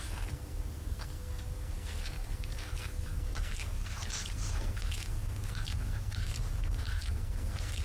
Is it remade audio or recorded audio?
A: remade